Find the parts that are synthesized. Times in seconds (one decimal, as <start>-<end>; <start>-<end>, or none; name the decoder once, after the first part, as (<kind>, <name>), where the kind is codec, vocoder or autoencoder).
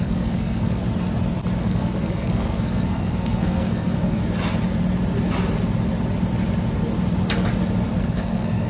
0.0-0.8 (codec, SNAC); 1.6-4.2; 8.0-8.7